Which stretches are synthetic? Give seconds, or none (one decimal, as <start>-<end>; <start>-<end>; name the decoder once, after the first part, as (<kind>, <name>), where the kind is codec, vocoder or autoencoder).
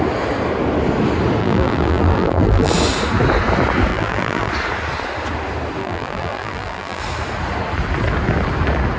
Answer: 1.4-2.7 (vocoder, BigVGAN v2); 3.9-4.5; 5.8-7.0